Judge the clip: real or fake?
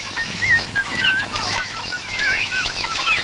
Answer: fake